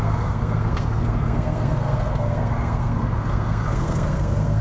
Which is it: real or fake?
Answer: fake